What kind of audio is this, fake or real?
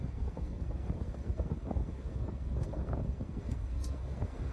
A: fake